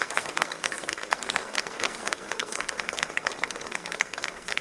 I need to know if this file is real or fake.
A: fake